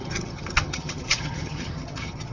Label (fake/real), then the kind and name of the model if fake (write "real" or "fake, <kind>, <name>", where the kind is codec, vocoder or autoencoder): fake, vocoder, HiFi-GAN